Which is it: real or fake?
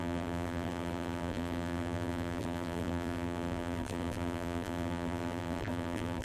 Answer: fake